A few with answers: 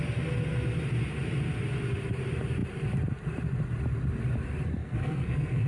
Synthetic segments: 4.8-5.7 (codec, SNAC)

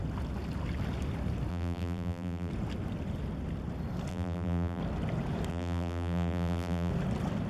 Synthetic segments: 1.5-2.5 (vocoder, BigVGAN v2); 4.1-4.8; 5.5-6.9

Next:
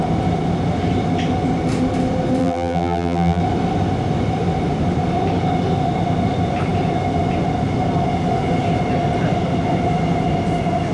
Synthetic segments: 2.4-3.4 (vocoder, BigVGAN v2)

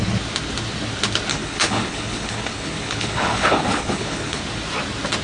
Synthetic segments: 1.3-4.4 (codec, HILCodec)

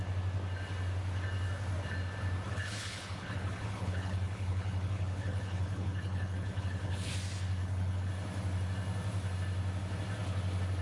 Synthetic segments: 2.5-7.1 (codec, HILCodec); 7.6-8.1